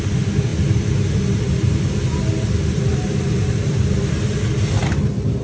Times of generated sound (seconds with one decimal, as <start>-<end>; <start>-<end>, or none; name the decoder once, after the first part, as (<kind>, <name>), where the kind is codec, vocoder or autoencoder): none